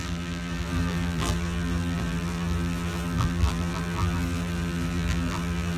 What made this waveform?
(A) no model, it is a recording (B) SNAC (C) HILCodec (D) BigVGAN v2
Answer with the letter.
D